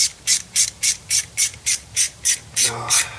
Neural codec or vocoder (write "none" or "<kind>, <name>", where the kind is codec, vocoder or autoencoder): vocoder, BigVGAN v2